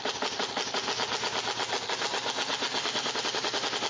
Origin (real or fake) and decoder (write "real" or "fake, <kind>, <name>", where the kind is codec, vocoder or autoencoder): real